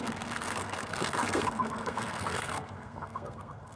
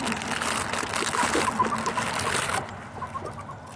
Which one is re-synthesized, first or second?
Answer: first